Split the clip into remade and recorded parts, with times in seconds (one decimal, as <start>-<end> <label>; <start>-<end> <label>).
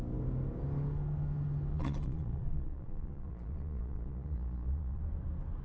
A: 0.0-1.7 recorded; 1.7-5.0 remade; 5.0-5.6 recorded